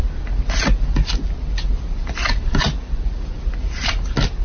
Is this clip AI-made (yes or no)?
no